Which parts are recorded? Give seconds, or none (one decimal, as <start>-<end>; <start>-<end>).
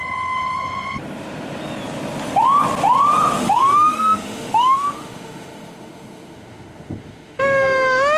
0.0-3.4